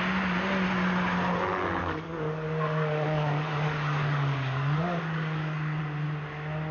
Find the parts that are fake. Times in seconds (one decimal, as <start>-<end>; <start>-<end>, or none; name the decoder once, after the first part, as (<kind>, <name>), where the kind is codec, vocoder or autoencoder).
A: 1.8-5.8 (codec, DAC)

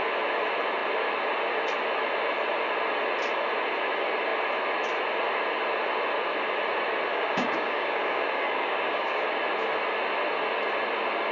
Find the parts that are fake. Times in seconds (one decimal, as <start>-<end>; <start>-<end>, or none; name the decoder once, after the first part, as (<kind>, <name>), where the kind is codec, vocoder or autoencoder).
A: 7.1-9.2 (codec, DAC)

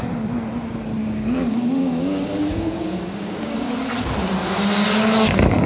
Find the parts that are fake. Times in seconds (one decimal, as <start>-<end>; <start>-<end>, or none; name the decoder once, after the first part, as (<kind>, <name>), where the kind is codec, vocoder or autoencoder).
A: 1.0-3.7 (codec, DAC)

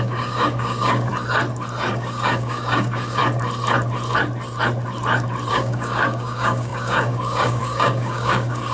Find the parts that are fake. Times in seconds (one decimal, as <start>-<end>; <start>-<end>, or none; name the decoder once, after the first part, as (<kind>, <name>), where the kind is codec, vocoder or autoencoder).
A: 0.0-1.1 (codec, DAC); 1.9-3.2; 5.5-8.7

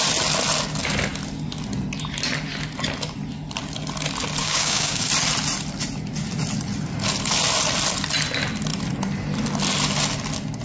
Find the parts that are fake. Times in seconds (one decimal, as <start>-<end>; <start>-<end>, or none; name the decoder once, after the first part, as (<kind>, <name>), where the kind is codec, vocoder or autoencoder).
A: 4.4-5.1 (codec, DAC)